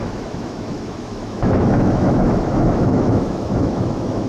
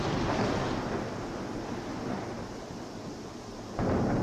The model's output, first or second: first